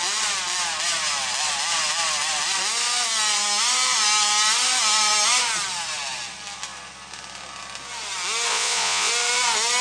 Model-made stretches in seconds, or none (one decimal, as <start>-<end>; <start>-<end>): 8.5-9.1